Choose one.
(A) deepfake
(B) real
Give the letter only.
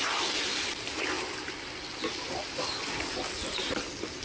B